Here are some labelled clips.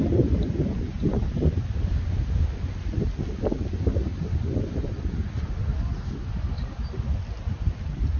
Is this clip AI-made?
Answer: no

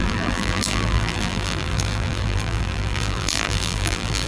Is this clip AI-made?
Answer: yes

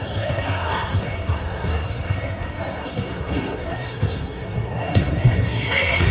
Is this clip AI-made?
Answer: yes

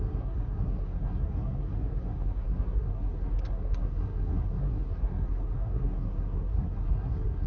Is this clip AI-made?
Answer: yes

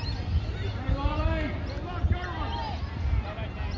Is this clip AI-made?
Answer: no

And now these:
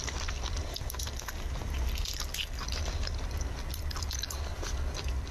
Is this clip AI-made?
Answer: no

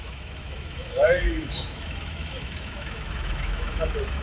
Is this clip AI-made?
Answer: yes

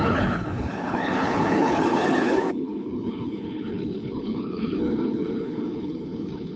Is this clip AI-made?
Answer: yes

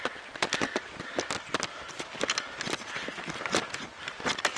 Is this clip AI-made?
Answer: no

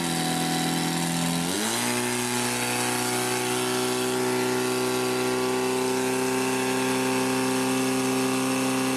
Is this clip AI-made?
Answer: no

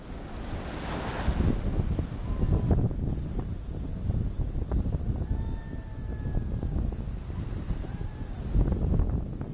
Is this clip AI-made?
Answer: no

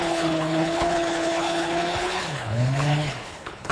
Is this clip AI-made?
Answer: yes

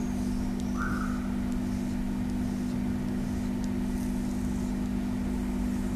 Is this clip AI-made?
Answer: no